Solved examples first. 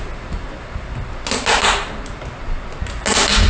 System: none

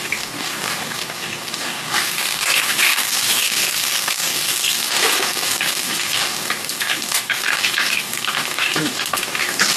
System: codec, DAC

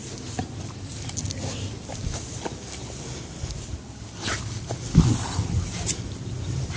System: none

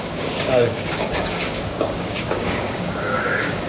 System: codec, DAC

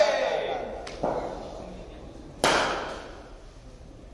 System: none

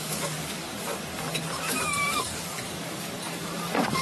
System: codec, DAC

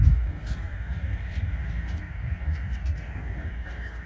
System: codec, DAC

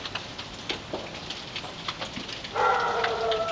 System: none